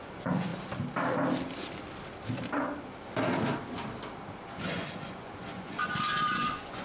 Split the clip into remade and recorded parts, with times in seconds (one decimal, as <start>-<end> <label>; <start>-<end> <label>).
0.0-0.5 remade; 0.5-4.6 recorded; 4.6-6.8 remade